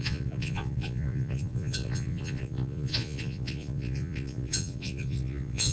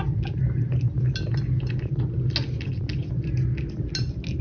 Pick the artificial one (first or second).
first